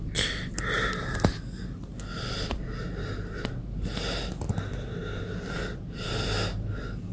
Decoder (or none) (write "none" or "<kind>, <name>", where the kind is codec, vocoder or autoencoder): none